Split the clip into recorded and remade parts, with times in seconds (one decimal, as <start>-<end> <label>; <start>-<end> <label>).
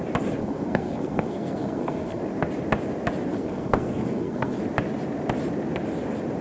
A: 0.0-0.4 recorded; 0.4-2.2 remade; 2.2-3.3 recorded; 3.3-4.6 remade; 4.6-6.4 recorded